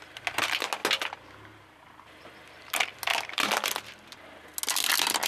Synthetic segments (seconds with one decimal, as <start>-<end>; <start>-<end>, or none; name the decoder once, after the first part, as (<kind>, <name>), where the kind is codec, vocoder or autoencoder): 3.1-3.9 (vocoder, BigVGAN v2)

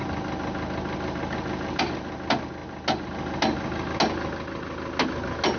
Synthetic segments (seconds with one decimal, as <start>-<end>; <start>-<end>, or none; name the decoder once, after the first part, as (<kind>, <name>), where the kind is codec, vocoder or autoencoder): none

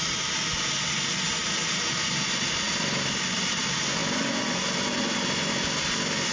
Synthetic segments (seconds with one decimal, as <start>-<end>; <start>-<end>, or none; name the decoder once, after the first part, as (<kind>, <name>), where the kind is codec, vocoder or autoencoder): none

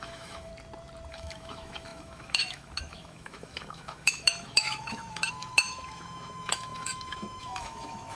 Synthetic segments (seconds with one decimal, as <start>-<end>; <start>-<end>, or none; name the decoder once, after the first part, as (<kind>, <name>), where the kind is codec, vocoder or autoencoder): 0.0-0.5 (autoencoder, DAC-VAE); 1.1-8.2